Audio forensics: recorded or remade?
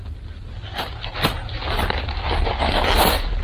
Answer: recorded